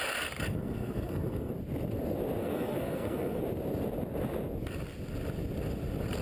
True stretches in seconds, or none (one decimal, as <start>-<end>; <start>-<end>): 0.0-0.5; 1.5-2.4; 3.4-6.2